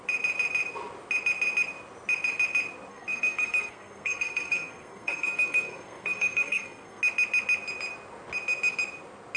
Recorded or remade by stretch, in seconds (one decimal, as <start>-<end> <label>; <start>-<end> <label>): 0.0-2.9 recorded; 2.9-7.0 remade; 7.0-9.4 recorded